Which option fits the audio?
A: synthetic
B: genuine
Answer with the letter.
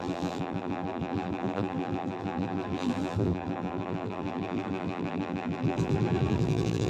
A